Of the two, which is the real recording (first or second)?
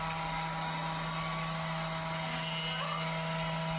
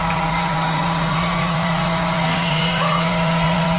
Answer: first